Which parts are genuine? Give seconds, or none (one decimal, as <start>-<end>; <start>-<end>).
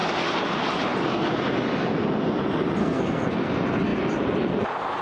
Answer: 0.0-2.8; 3.5-5.0